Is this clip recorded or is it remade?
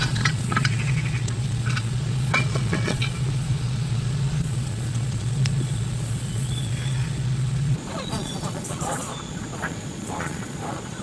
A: remade